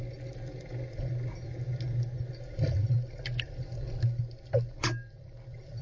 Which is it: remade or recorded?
recorded